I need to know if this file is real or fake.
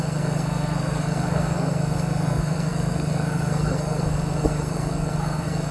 fake